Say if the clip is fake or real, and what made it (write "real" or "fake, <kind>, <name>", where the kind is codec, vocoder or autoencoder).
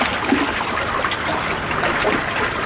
real